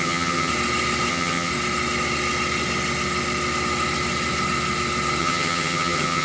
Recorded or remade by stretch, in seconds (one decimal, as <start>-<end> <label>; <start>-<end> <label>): 0.0-0.5 remade; 0.5-1.1 recorded; 1.1-1.5 remade; 1.5-5.2 recorded; 5.2-6.2 remade